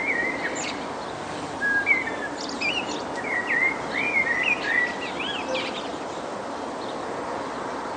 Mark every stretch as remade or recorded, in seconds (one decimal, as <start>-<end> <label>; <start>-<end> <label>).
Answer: 0.0-8.0 recorded